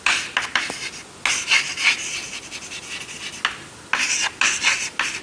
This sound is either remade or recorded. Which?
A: recorded